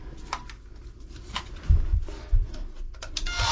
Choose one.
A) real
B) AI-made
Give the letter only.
A